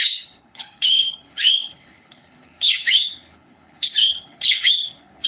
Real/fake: fake